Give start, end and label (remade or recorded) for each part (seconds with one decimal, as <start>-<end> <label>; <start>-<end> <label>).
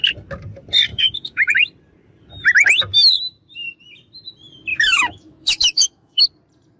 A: 0.0-0.9 recorded; 0.9-1.5 remade; 1.5-4.7 recorded; 4.7-6.2 remade; 6.2-6.8 recorded